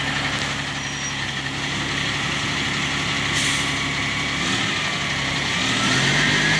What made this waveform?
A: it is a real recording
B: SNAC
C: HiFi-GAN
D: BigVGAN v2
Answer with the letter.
A